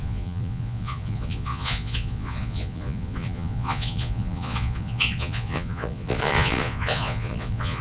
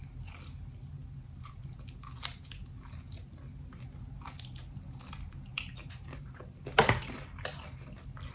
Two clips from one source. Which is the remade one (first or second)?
first